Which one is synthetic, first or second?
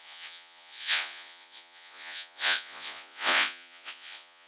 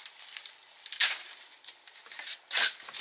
first